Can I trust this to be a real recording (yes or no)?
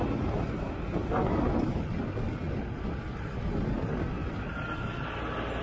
yes